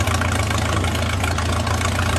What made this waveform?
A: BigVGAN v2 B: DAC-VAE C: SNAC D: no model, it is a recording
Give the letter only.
D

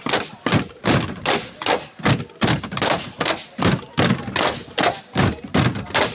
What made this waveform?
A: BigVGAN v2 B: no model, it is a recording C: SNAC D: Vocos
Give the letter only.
B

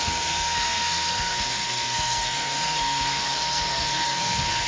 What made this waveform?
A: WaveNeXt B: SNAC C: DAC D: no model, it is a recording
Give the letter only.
B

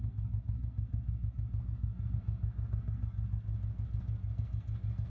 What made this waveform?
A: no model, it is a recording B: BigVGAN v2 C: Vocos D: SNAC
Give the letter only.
D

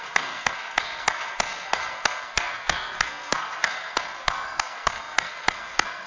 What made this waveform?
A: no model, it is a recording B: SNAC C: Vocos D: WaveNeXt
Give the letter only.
B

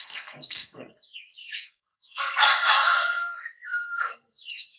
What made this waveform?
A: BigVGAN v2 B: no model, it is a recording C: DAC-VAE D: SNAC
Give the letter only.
D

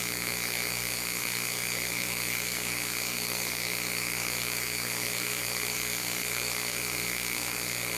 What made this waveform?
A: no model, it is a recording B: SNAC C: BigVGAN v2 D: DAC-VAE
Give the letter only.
B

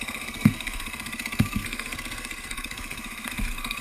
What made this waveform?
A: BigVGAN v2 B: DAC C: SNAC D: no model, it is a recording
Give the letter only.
C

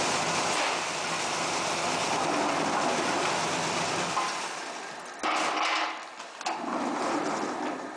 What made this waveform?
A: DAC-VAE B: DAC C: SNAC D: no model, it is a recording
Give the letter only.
D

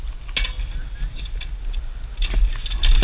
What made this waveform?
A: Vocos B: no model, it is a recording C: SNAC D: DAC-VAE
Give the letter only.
B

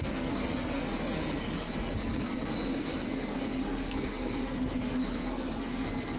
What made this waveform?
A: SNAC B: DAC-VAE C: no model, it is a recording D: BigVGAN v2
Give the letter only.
A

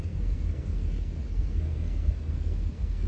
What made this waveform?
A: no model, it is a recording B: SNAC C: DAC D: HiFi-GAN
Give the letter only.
B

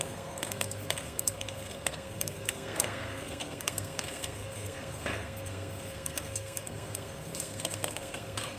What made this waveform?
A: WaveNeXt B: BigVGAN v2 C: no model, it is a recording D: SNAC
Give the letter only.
D